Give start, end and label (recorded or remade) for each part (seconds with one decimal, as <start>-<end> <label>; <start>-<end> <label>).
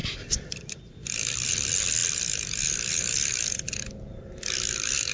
0.0-1.5 remade; 1.5-5.1 recorded